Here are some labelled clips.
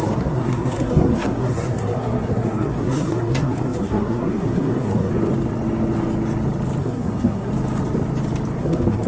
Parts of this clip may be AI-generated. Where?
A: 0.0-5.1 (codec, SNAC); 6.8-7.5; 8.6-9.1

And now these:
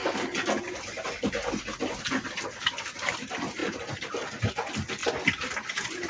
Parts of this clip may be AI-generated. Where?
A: none

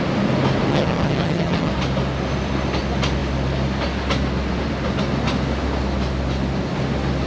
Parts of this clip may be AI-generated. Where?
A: 0.7-1.7 (vocoder, HiFi-GAN)

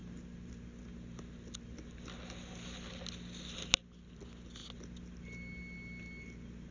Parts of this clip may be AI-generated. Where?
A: none

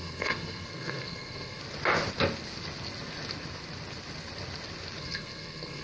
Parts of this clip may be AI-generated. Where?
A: 0.0-1.6 (codec, SNAC); 5.0-5.8

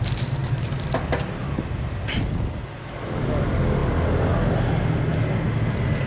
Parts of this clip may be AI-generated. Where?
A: 0.4-1.1 (vocoder, BigVGAN v2)